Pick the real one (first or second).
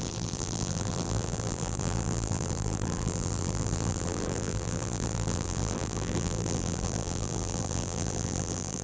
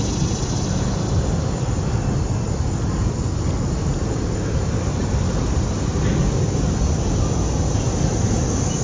second